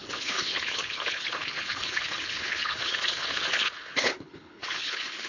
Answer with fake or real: fake